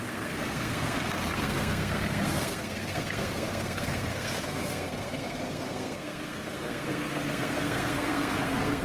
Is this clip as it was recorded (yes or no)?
no